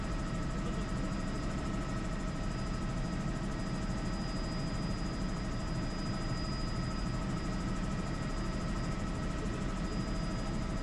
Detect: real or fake real